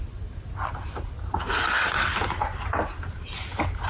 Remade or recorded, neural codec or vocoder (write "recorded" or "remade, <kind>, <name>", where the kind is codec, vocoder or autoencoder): recorded